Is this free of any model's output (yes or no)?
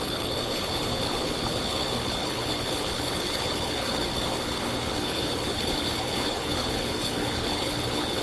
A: no